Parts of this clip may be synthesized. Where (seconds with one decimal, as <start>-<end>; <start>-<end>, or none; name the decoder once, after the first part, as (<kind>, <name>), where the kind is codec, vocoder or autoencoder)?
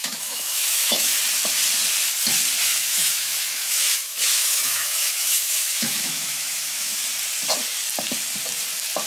0.0-1.2 (autoencoder, DAC-VAE); 2.7-7.0